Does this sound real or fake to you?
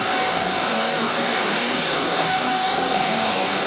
fake